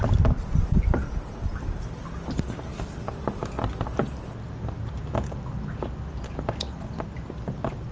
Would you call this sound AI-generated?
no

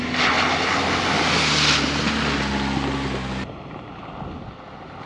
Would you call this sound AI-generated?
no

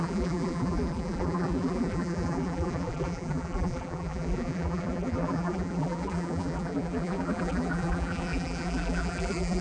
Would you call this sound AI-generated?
yes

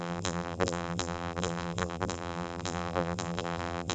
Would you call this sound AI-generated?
yes